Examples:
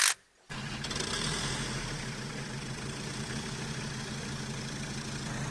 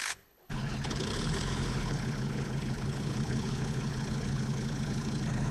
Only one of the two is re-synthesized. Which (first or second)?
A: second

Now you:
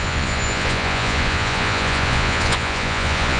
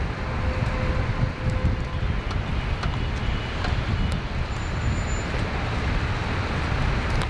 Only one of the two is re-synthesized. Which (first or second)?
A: first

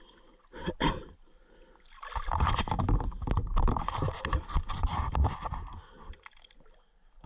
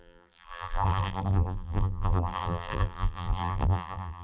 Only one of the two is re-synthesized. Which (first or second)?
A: second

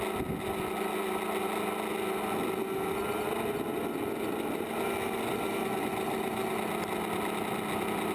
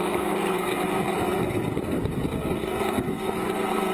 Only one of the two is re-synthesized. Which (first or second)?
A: second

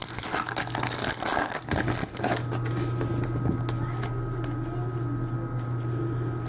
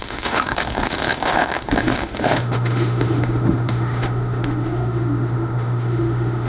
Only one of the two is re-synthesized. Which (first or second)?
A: second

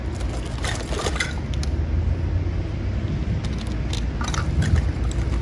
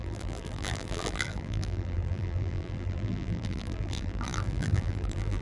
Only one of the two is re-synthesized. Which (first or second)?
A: second